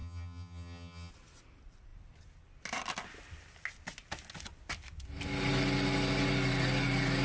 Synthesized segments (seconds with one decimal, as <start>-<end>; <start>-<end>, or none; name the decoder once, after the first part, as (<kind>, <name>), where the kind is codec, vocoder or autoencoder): 0.0-1.1 (vocoder, HiFi-GAN)